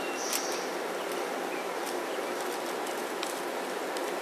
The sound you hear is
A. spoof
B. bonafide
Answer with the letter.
B